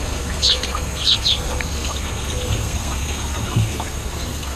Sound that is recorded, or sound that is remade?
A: remade